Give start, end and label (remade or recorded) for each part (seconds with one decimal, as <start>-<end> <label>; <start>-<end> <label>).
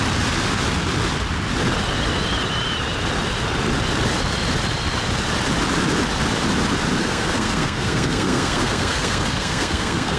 0.0-7.0 recorded; 7.0-10.2 remade